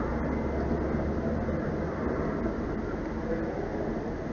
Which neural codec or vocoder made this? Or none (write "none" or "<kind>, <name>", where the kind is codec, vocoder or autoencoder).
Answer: none